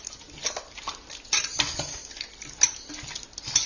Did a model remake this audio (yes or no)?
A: no